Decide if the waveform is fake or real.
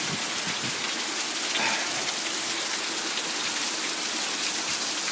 real